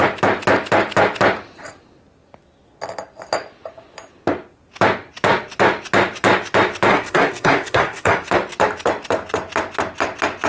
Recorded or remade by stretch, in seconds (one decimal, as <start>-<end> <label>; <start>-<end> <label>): 0.0-6.9 recorded; 6.9-8.3 remade; 8.3-10.5 recorded